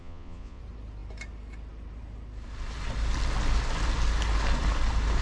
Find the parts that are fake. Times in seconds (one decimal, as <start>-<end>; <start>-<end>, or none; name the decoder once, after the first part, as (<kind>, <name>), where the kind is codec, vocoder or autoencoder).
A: 0.0-0.6 (vocoder, Vocos)